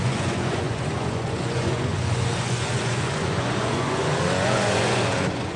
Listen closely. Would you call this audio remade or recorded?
remade